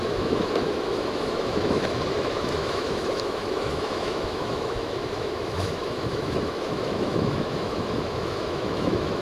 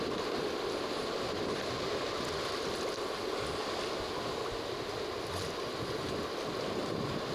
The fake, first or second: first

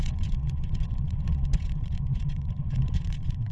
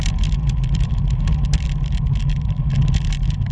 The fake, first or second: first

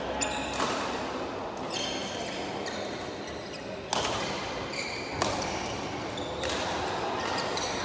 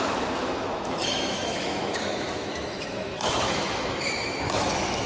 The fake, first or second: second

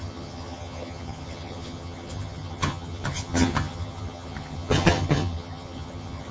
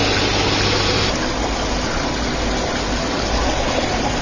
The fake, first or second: first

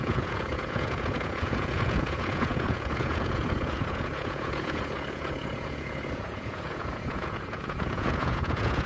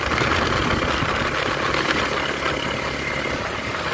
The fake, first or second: first